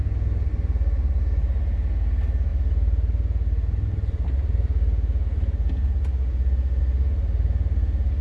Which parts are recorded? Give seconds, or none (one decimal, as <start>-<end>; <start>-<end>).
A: 0.0-8.2